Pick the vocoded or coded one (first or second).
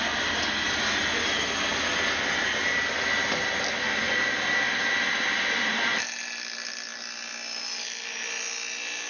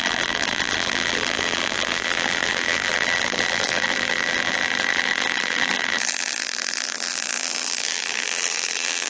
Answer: second